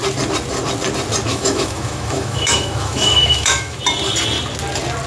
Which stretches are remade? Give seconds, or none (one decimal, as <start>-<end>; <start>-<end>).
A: 1.3-3.8